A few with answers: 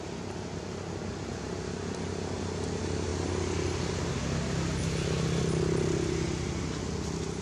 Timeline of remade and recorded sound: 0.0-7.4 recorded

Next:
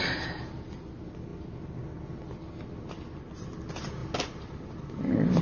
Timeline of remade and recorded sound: 0.0-5.4 recorded

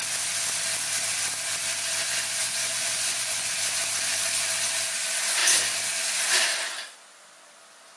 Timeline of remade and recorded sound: 0.0-2.0 recorded; 2.0-3.5 remade; 3.5-8.0 recorded

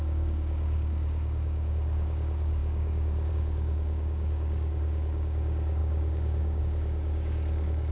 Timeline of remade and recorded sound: 0.0-7.9 remade

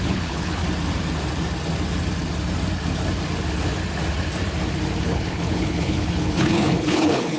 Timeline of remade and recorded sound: 0.0-0.6 remade; 0.6-5.0 recorded; 5.0-7.4 remade

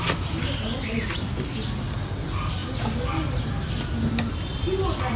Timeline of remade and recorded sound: 0.0-5.2 recorded